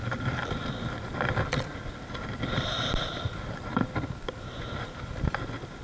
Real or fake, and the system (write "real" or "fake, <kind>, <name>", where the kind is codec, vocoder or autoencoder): real